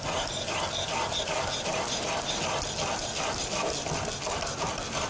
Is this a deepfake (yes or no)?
no